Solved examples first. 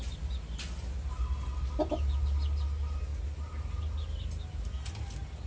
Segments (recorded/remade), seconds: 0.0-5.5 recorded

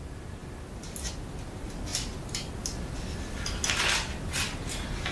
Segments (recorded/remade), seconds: 0.0-5.1 recorded